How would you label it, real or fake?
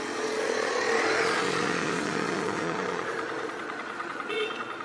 fake